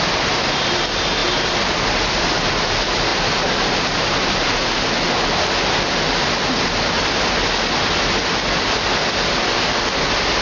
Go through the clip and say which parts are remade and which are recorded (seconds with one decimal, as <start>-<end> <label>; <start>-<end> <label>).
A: 0.0-10.4 recorded

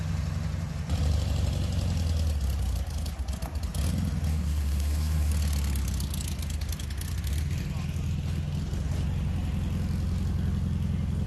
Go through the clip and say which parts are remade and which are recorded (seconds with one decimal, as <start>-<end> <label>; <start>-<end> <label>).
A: 0.0-4.3 recorded; 4.3-5.3 remade; 5.3-11.3 recorded

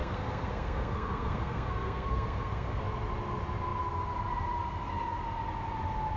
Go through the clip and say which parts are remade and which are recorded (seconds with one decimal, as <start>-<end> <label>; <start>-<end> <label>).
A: 0.0-2.8 remade; 2.8-6.2 recorded

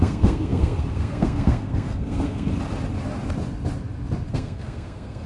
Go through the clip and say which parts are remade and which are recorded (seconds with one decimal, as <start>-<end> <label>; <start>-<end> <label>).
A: 0.0-2.5 remade; 2.5-4.3 recorded; 4.3-5.3 remade

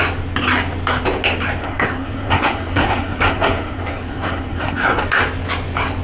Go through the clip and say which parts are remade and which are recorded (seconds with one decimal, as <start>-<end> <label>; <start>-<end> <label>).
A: 0.0-1.6 recorded; 1.6-5.2 remade; 5.2-6.0 recorded